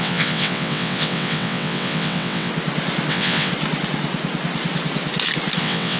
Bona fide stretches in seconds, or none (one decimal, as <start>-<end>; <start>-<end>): 2.5-3.1; 3.5-5.6

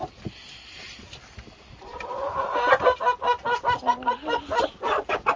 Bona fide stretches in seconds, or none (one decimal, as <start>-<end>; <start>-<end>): 0.0-5.4

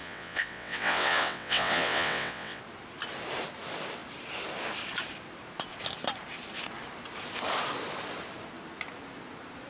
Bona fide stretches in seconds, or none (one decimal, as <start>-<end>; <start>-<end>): 2.6-9.7

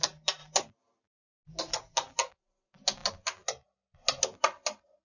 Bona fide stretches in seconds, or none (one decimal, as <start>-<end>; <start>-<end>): 0.0-5.0

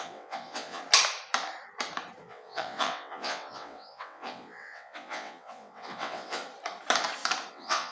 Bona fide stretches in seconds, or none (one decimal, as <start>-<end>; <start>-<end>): 0.8-2.2; 6.4-7.5

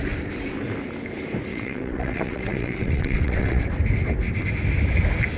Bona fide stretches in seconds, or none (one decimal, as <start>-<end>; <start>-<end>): 0.0-1.5; 3.6-5.4

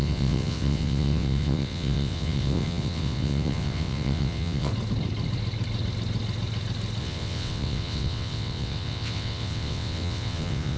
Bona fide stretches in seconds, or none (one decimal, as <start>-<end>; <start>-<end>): 4.7-7.0